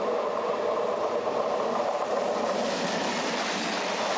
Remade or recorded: recorded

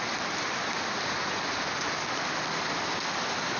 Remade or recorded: recorded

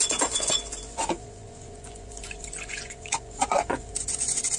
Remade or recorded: remade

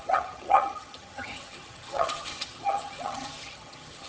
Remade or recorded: remade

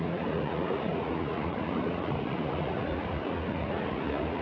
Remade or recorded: remade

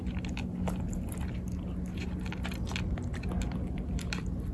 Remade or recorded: recorded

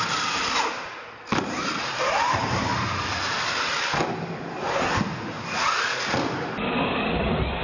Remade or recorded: recorded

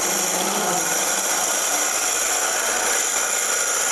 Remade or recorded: recorded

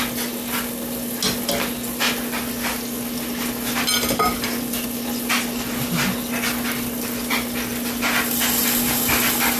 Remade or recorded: recorded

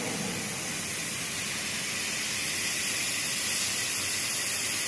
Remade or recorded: recorded